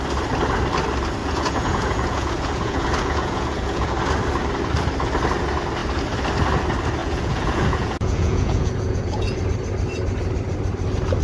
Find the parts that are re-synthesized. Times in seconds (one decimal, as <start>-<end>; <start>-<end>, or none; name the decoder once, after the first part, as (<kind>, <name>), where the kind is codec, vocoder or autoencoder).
1.2-3.9 (vocoder, Vocos); 7.0-9.4